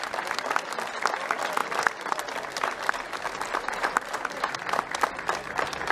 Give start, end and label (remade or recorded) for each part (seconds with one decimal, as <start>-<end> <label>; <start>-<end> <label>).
0.0-1.6 recorded; 1.6-5.1 remade; 5.1-5.9 recorded